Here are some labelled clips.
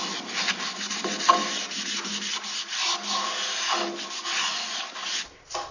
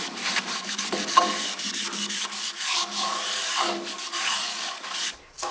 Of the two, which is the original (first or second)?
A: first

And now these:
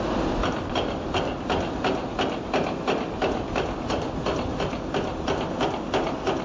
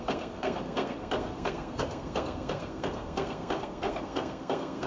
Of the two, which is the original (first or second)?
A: first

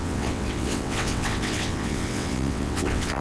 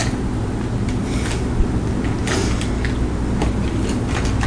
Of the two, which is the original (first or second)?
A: second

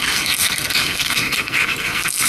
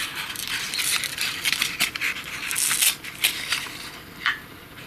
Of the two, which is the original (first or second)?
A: second